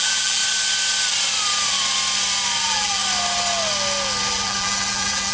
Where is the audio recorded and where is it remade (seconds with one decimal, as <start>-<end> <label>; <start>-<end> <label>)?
0.0-0.4 remade; 0.4-2.6 recorded; 2.6-3.0 remade; 3.0-4.3 recorded; 4.3-5.3 remade